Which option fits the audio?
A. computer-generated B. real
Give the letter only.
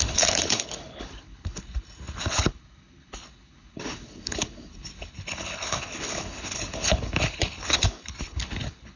A